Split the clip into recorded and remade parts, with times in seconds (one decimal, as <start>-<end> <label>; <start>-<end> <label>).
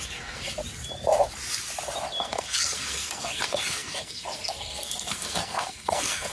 0.0-0.6 remade; 0.6-2.2 recorded; 2.2-6.3 remade